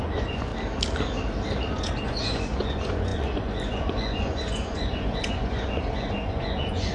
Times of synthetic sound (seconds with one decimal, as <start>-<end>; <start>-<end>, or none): 0.0-0.5; 1.7-6.9